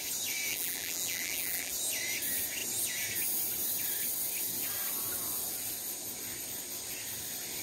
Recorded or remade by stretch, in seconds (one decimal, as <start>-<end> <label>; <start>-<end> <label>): 0.0-0.5 recorded; 0.5-1.7 remade; 1.7-7.6 recorded